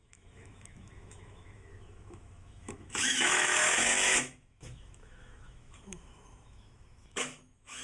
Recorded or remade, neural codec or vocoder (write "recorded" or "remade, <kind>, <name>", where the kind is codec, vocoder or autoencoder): remade, autoencoder, DAC-VAE